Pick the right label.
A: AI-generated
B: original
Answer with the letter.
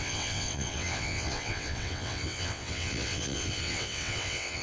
A